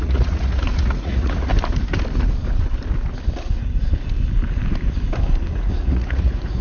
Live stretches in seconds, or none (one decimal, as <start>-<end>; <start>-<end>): 1.5-5.5